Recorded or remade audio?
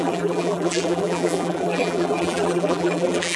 remade